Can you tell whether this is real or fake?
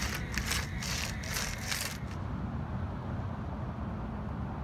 real